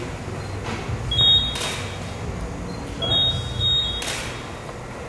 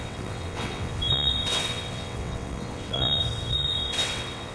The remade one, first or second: second